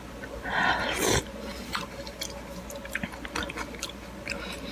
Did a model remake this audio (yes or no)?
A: no